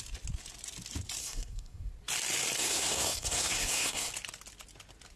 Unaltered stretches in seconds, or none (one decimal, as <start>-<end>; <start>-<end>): 0.0-1.2; 1.9-2.6; 4.1-5.2